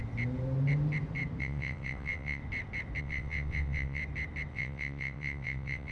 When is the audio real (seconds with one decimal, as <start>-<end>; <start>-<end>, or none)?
0.0-1.4; 2.4-3.0; 4.0-4.5